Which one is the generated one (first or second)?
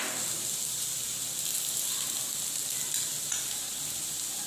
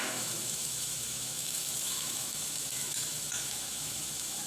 second